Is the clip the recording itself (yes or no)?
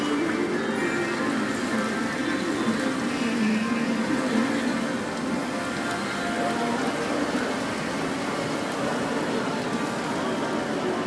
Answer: yes